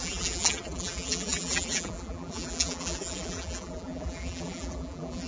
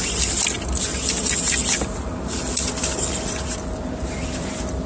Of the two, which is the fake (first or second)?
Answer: first